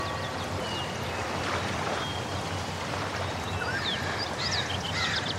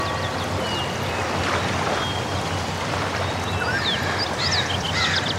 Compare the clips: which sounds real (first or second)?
second